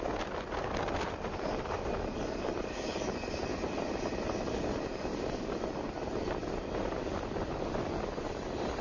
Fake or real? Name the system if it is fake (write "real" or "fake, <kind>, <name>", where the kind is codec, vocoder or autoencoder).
real